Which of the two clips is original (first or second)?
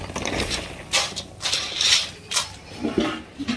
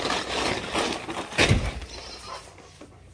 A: second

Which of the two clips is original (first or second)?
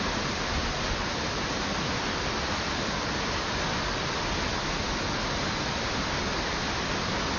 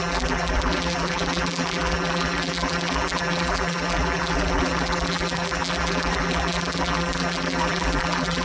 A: first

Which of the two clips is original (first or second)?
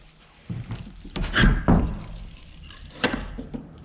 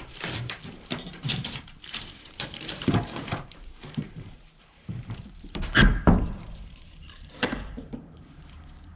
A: first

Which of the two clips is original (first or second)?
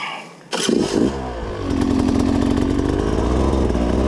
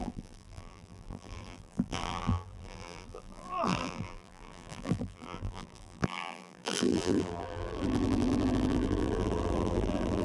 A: first